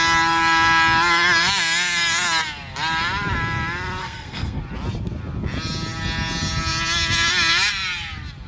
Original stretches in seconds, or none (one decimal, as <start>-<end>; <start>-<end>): 0.0-4.0; 4.6-8.5